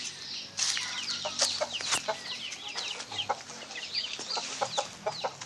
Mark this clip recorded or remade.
recorded